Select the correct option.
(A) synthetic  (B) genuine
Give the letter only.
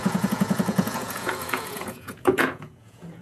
A